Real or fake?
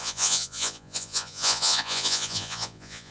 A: fake